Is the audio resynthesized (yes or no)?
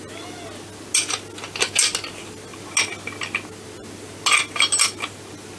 no